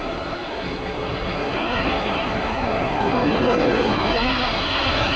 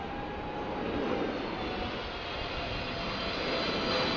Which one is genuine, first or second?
second